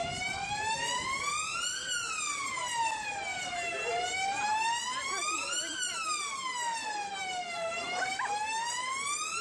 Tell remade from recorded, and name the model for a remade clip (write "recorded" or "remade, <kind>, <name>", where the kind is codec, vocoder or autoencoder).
recorded